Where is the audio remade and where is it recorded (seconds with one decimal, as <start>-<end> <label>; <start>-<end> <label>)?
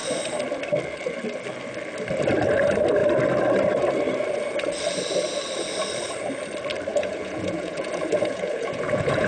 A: 0.0-6.9 recorded; 6.9-9.3 remade